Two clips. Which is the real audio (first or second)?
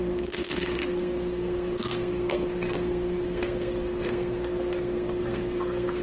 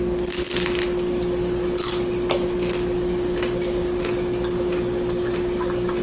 second